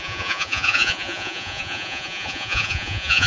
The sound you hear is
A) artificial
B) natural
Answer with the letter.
A